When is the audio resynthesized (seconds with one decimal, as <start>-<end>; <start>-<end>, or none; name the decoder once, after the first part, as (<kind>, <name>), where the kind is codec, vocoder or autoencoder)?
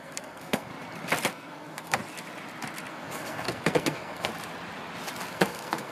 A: 0.0-0.7 (codec, SNAC); 1.3-2.0; 2.9-4.3; 5.3-5.9